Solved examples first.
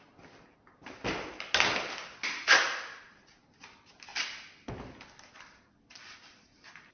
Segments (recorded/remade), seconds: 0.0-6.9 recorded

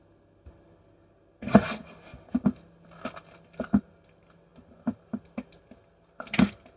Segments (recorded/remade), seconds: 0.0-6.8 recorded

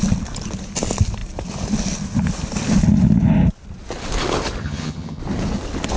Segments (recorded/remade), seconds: 0.0-4.6 recorded; 4.6-5.2 remade; 5.2-6.0 recorded

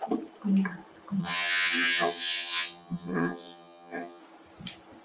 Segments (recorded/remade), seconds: 0.0-1.2 recorded; 1.2-4.2 remade; 4.2-5.0 recorded

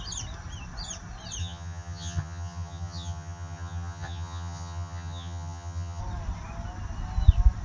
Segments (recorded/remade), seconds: 0.0-1.4 recorded; 1.4-6.0 remade; 6.0-7.6 recorded